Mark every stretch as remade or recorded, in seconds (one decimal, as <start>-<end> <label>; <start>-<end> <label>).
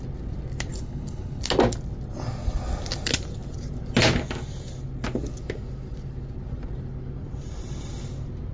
0.0-0.7 recorded; 0.7-1.4 remade; 1.4-8.5 recorded